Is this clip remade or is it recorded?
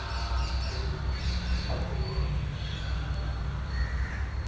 recorded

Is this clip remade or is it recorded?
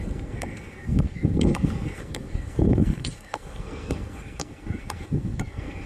remade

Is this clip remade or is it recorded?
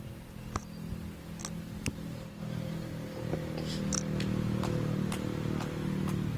recorded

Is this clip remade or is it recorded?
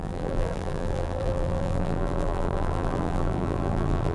remade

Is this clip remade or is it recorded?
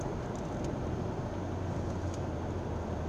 recorded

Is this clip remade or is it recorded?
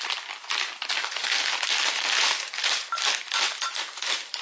recorded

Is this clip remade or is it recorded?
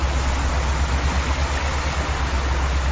recorded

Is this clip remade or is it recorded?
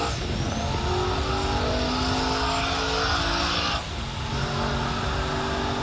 recorded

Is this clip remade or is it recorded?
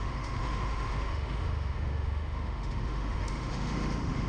remade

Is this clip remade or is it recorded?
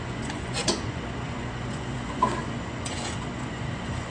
remade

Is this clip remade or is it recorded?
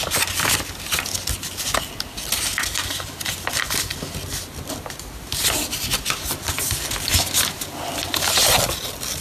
recorded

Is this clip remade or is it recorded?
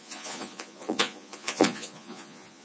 remade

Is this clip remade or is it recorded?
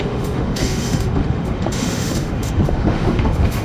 remade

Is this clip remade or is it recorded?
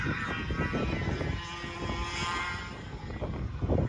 recorded